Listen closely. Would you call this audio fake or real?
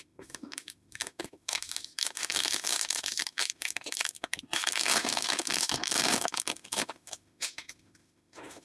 fake